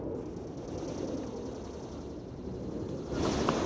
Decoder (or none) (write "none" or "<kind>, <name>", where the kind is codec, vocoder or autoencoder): none